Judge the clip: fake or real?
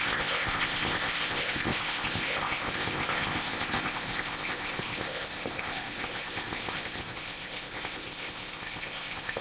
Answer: fake